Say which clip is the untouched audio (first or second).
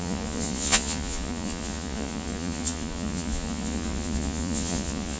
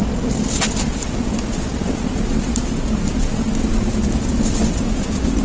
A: second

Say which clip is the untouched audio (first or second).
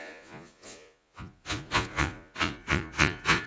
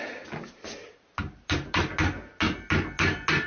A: second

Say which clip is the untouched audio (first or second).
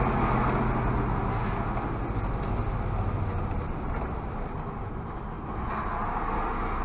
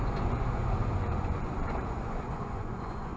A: first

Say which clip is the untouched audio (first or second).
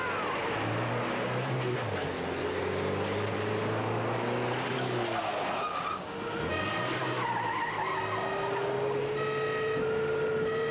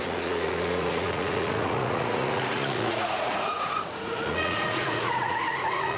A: first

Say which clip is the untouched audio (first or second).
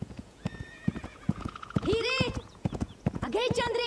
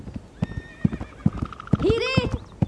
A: second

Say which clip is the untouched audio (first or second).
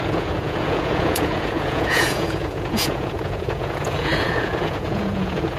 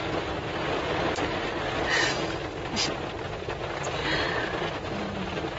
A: second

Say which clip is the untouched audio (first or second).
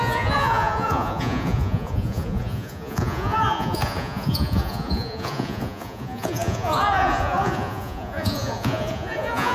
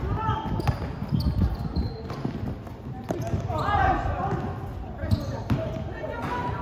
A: second